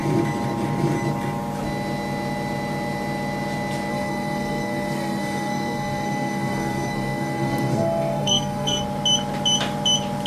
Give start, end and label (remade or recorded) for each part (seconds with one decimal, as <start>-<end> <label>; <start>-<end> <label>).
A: 0.0-3.9 recorded; 3.9-8.8 remade; 8.8-10.3 recorded